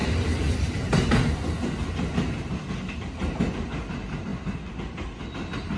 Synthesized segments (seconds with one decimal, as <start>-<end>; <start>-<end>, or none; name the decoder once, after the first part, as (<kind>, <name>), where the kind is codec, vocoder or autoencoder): none